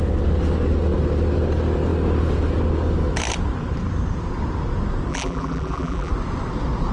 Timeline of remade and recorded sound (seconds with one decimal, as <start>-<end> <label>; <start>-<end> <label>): 0.0-5.1 recorded; 5.1-6.1 remade; 6.1-6.9 recorded